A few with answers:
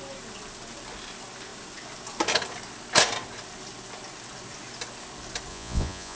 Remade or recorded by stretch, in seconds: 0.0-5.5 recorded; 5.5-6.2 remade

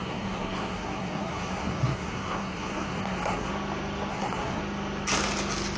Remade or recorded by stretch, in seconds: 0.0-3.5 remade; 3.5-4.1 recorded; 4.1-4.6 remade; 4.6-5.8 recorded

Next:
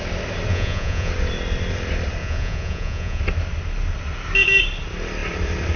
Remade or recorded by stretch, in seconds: 0.0-0.5 recorded; 0.5-1.1 remade; 1.1-2.2 recorded; 2.2-3.2 remade; 3.2-5.8 recorded